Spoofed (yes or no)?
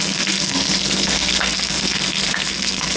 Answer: yes